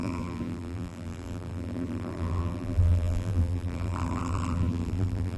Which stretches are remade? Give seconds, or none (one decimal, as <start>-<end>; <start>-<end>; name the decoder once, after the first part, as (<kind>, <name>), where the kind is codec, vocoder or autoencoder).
0.0-5.4 (vocoder, BigVGAN v2)